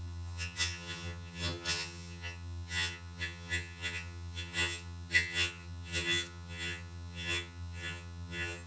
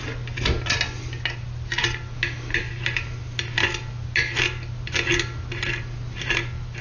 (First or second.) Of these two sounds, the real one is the second